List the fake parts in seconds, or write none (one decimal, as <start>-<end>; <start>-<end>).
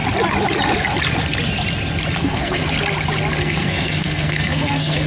2.2-2.6; 3.4-5.1